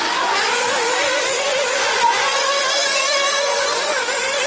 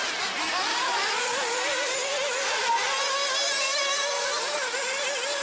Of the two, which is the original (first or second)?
second